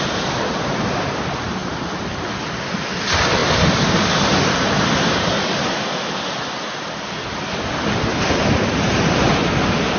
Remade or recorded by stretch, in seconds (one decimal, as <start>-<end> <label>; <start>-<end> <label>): 0.0-8.1 recorded; 8.1-8.8 remade; 8.8-10.0 recorded